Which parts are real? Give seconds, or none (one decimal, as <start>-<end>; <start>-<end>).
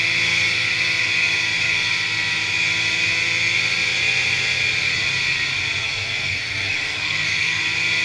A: 0.0-5.8; 7.6-8.0